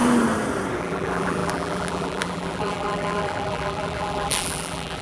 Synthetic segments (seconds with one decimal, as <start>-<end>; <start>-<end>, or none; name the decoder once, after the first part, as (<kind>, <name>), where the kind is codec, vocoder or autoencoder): 0.8-5.0 (vocoder, BigVGAN v2)